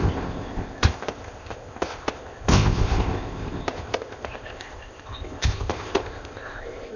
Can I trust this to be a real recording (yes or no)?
no